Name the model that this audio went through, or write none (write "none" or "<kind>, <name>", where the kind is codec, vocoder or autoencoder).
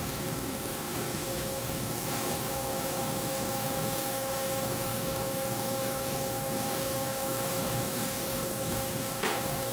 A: codec, DAC